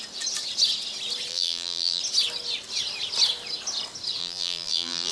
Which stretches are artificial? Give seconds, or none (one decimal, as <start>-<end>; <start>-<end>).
1.3-2.0; 4.2-5.1